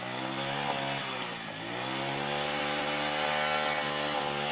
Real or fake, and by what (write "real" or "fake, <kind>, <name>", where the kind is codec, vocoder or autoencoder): real